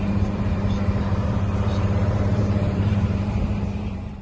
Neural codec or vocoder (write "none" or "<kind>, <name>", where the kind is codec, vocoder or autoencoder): vocoder, BigVGAN v2